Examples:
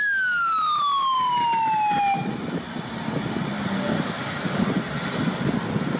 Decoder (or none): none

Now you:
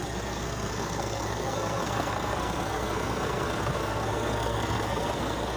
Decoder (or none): codec, SNAC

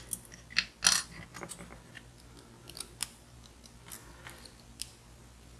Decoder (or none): none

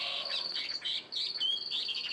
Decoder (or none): none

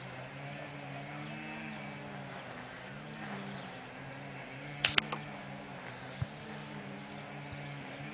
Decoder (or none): none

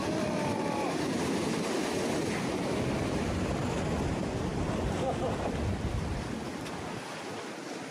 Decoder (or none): none